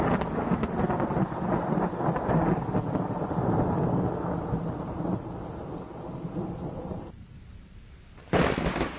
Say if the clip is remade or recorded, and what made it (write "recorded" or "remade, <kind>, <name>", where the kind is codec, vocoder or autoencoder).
recorded